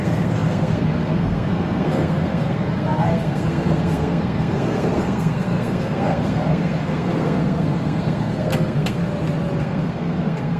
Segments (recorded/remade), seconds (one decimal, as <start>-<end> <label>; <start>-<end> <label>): 0.0-9.0 remade; 9.0-9.6 recorded; 9.6-10.6 remade